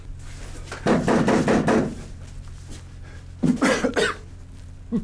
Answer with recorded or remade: recorded